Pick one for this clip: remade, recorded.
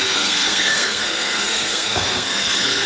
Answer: remade